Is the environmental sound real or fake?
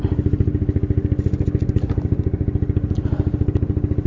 real